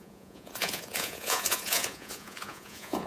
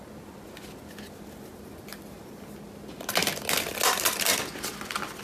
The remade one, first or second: first